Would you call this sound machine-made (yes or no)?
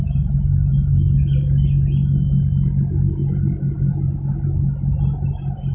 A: no